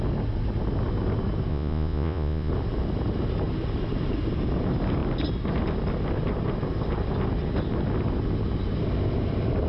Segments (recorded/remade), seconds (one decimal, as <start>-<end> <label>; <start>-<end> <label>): 0.0-1.5 recorded; 1.5-2.5 remade; 2.5-9.7 recorded